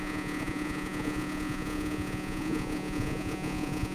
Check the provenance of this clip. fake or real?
fake